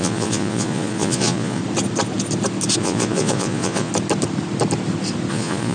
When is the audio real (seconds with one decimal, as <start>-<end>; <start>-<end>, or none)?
1.6-2.8; 3.9-5.3